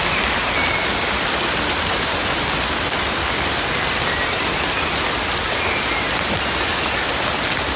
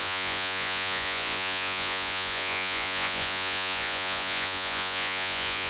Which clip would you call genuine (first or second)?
first